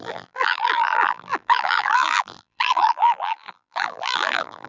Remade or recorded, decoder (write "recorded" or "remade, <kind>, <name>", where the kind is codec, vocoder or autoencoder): remade, vocoder, BigVGAN v2